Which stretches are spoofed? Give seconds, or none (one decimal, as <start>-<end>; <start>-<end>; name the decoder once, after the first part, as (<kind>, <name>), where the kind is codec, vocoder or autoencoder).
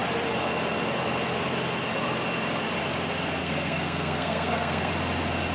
3.4-4.9 (codec, SNAC)